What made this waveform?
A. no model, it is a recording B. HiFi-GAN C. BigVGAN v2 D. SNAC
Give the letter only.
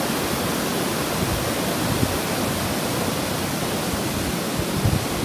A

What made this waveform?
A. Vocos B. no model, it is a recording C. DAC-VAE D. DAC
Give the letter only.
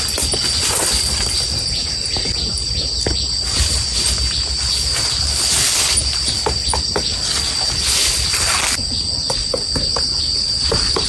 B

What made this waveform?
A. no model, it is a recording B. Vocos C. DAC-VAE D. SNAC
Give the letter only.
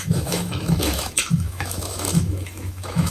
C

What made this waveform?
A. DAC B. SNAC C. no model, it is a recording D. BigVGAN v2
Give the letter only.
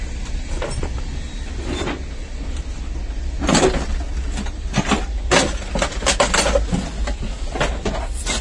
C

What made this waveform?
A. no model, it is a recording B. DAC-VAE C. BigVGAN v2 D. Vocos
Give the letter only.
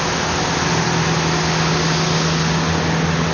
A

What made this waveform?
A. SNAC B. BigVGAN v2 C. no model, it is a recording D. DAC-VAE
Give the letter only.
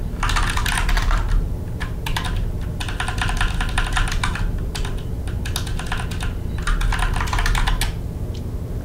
C